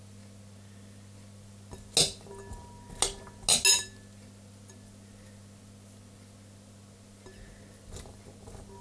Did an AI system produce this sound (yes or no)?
no